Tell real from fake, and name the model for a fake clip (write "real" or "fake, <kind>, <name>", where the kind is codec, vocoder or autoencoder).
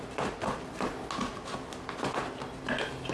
real